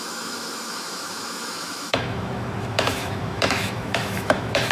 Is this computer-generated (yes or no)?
yes